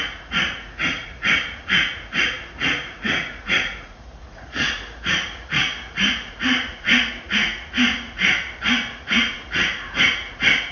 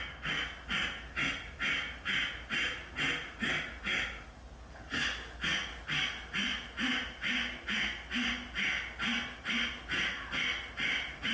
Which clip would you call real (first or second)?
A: second